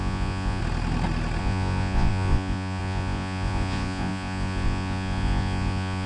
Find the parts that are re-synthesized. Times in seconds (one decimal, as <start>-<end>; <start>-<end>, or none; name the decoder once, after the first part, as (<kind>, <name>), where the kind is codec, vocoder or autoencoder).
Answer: 0.0-0.6 (vocoder, Vocos); 1.4-6.1